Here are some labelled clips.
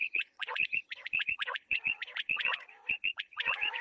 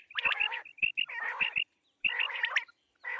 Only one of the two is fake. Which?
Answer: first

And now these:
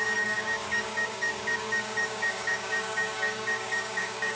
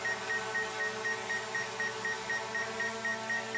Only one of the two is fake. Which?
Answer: first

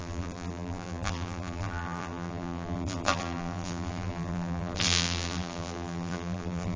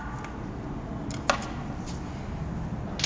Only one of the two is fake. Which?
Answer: first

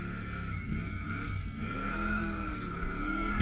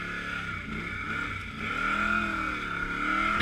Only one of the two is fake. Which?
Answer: first